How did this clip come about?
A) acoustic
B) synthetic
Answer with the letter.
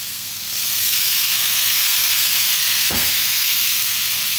B